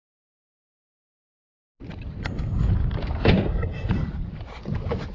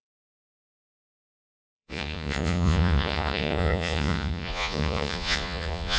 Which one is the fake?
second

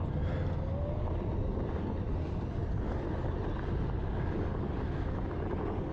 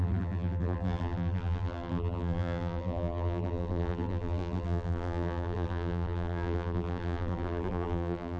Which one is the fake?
second